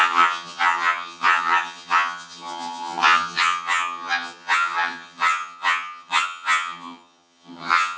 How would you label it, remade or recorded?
remade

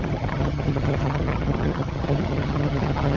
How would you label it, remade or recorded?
remade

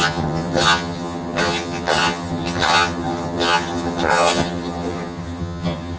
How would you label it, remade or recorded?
remade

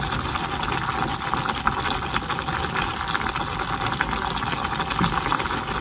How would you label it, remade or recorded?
recorded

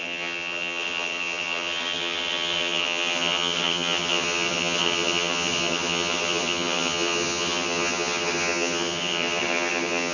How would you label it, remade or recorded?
remade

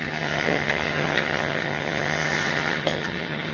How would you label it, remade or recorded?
remade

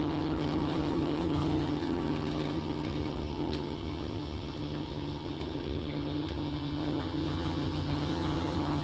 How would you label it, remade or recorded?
remade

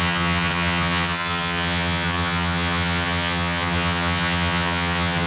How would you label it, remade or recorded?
remade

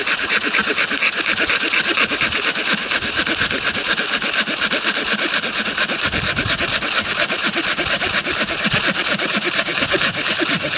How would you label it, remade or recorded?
recorded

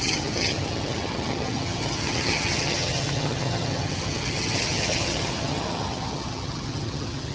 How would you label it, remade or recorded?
remade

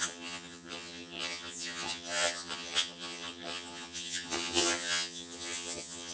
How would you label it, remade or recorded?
remade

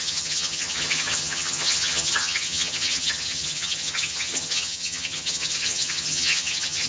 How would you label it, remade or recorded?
remade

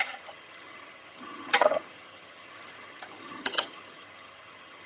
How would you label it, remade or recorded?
remade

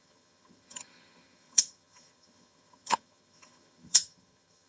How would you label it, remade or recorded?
remade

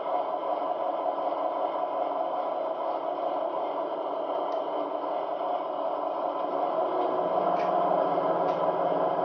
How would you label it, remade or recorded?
recorded